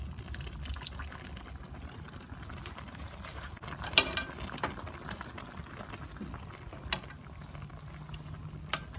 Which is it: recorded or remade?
recorded